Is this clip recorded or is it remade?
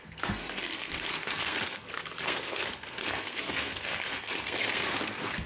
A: remade